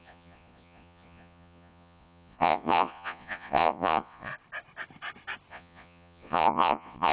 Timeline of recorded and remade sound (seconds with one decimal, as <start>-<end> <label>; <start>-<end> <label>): 0.0-4.3 remade; 4.3-5.5 recorded; 5.5-7.1 remade